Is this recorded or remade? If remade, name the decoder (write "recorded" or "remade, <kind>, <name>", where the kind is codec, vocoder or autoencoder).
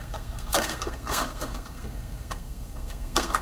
remade, codec, SNAC